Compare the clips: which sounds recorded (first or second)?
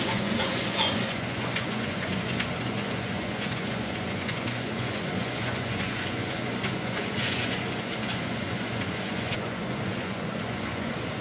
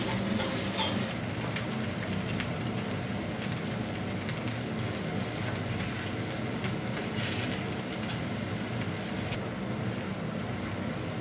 second